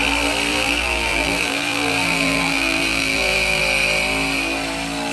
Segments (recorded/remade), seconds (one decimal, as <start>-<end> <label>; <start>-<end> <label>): 0.0-0.5 recorded; 0.5-3.6 remade; 3.6-5.1 recorded